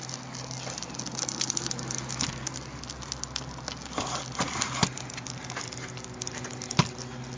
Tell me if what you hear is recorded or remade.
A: recorded